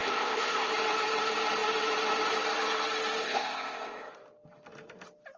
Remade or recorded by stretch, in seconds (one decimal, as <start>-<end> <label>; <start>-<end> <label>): 0.0-0.7 remade; 0.7-3.2 recorded; 3.2-4.1 remade; 4.1-5.4 recorded

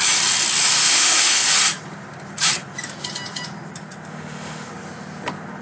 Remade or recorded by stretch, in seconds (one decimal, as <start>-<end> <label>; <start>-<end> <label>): 0.0-0.8 recorded; 0.8-1.5 remade; 1.5-4.1 recorded; 4.1-4.7 remade; 4.7-5.6 recorded

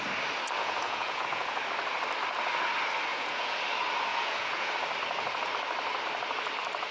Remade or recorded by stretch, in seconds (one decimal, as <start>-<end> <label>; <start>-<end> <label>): 0.0-0.6 recorded; 0.6-1.6 remade; 1.6-3.1 recorded; 3.1-3.6 remade; 3.6-4.1 recorded; 4.1-4.7 remade; 4.7-6.9 recorded

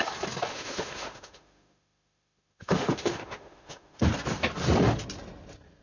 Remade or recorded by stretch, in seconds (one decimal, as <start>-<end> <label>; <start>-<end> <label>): 0.0-0.5 recorded; 0.5-4.0 remade; 4.0-5.8 recorded

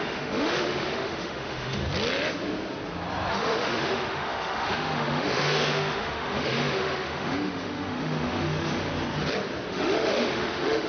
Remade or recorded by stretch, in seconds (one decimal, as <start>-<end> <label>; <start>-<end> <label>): 0.0-1.8 remade; 1.8-3.3 recorded; 3.3-8.9 remade; 8.9-9.7 recorded; 9.7-10.9 remade